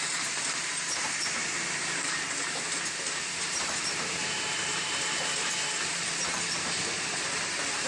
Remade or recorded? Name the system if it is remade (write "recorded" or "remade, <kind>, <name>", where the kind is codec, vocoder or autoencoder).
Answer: remade, vocoder, BigVGAN v2